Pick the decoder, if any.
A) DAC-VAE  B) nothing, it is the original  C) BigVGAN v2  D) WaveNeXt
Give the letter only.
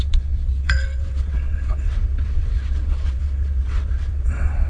D